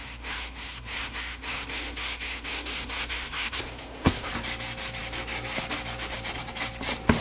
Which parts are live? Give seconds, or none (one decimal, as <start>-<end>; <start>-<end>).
4.3-7.2